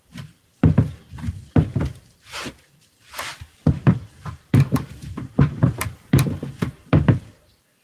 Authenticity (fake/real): fake